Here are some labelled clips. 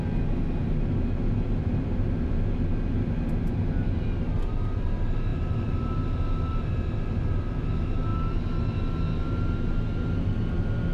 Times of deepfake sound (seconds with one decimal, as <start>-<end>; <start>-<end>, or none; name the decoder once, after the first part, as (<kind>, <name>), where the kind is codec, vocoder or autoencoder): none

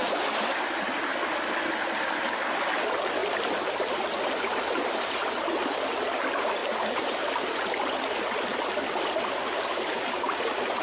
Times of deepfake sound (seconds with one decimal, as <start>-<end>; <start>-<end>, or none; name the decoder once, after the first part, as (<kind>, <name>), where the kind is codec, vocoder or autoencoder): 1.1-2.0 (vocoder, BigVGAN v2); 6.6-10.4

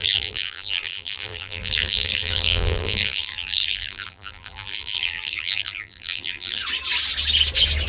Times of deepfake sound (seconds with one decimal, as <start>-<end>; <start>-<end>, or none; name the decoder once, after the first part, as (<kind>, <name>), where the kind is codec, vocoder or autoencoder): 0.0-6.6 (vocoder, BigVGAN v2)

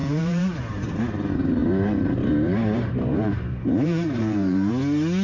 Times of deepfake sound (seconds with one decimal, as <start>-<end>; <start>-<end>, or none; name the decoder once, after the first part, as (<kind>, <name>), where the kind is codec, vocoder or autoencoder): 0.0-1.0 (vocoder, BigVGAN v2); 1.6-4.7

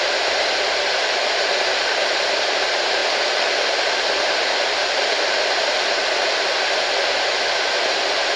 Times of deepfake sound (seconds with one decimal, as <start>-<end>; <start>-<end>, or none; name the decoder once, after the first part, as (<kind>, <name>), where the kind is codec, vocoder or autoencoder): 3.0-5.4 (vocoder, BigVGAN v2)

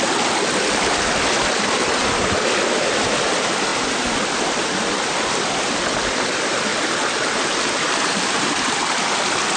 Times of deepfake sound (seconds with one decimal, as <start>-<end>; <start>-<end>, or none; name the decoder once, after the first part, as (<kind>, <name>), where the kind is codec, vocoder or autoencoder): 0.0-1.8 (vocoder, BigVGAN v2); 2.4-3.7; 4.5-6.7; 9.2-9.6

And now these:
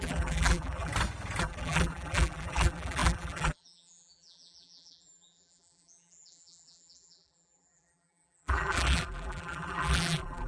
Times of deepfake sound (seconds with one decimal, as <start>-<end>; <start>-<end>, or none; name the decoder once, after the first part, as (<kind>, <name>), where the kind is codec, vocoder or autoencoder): 0.0-0.9 (vocoder, BigVGAN v2); 1.4-10.5